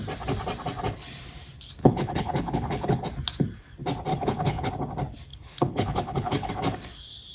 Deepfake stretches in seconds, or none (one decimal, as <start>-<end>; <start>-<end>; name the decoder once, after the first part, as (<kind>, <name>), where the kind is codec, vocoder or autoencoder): 1.8-3.0 (codec, HILCodec); 4.1-4.7; 5.3-6.5